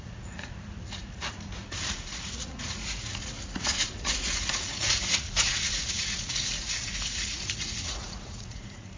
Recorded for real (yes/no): no